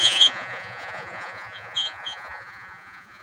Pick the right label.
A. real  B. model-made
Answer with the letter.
B